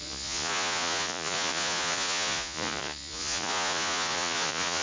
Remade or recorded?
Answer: remade